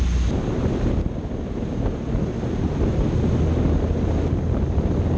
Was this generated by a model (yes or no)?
no